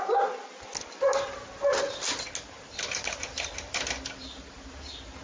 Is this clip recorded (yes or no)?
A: yes